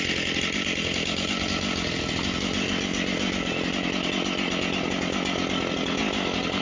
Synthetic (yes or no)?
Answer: no